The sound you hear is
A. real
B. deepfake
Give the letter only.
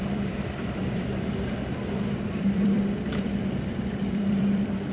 B